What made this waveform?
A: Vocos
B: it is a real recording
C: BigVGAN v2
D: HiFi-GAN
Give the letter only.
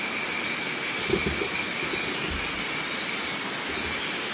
B